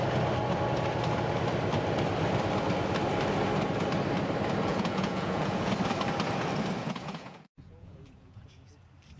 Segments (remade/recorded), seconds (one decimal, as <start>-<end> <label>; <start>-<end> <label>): 0.0-4.7 recorded; 4.7-5.7 remade; 5.7-6.8 recorded; 6.8-8.7 remade; 8.7-9.2 recorded